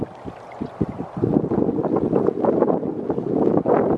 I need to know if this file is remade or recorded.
recorded